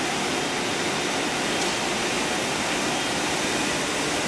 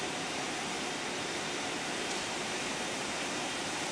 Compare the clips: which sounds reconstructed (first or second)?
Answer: second